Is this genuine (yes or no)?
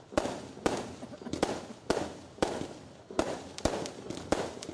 yes